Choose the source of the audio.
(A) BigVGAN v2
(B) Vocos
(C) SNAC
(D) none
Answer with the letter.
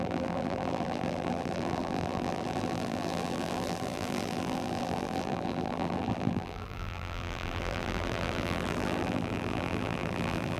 A